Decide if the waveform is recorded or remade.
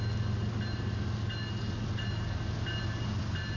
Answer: recorded